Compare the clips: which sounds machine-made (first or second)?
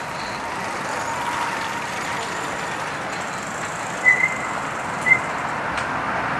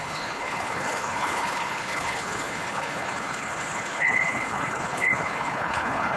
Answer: second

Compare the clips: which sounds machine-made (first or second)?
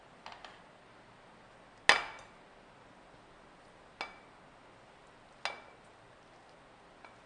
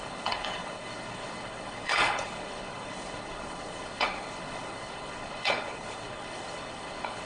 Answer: second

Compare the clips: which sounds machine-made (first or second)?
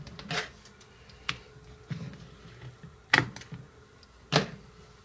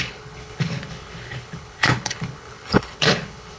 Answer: second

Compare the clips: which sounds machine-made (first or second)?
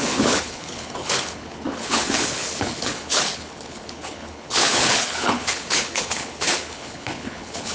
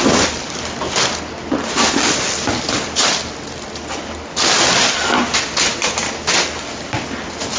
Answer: first